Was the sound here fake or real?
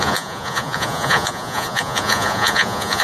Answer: fake